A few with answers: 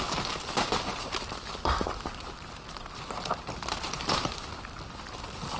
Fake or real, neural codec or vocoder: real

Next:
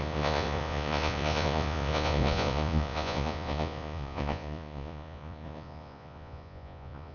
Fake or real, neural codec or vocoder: fake, vocoder, Vocos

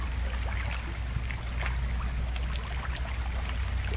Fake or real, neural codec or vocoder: real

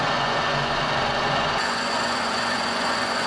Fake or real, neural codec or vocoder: fake, vocoder, Vocos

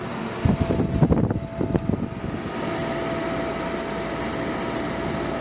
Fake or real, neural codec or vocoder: real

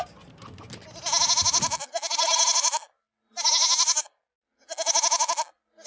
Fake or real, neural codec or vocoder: real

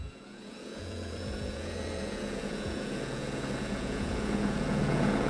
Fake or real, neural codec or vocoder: fake, vocoder, Vocos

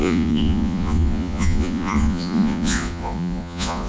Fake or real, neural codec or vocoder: fake, vocoder, Vocos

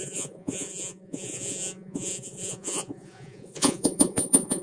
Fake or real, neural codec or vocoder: fake, vocoder, Vocos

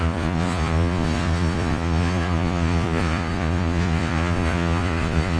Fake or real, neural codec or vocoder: fake, vocoder, Vocos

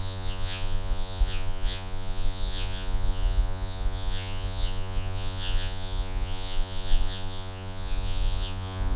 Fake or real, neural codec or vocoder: fake, vocoder, Vocos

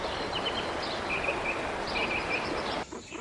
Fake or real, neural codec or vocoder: real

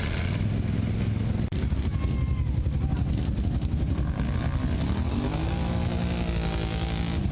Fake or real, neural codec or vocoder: real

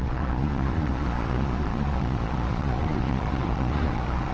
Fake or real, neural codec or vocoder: fake, vocoder, Vocos